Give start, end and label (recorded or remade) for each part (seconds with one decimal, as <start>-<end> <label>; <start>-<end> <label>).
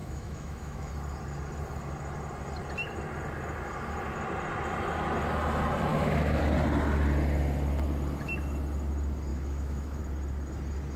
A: 0.0-0.9 remade; 0.9-5.9 recorded; 5.9-6.4 remade; 6.4-9.3 recorded; 9.3-10.0 remade; 10.0-11.0 recorded